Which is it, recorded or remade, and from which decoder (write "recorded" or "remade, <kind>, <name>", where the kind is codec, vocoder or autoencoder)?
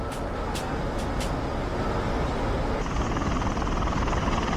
recorded